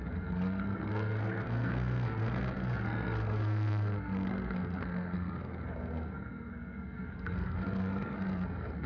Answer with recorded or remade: remade